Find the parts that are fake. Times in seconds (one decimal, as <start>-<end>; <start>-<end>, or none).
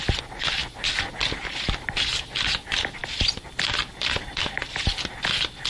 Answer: none